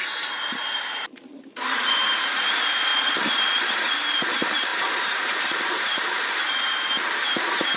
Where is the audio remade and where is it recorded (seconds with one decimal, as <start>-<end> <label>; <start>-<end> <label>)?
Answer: 0.0-2.9 remade; 2.9-4.3 recorded; 4.3-7.8 remade